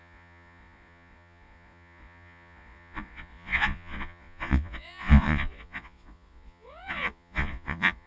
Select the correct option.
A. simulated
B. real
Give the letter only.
A